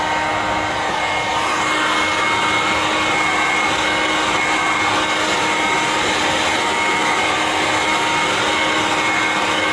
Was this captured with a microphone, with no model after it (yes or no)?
yes